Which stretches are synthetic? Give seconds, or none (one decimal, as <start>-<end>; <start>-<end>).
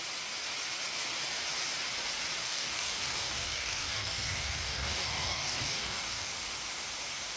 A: 2.4-6.3